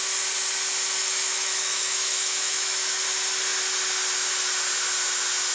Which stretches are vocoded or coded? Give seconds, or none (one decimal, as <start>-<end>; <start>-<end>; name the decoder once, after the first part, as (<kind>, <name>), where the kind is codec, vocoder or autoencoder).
1.0-3.0 (autoencoder, DAC-VAE)